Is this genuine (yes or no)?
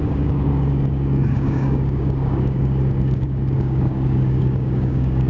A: no